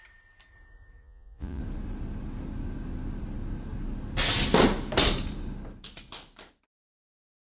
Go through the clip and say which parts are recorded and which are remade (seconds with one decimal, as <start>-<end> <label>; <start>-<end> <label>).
0.0-1.0 recorded; 1.0-1.6 remade; 1.6-7.4 recorded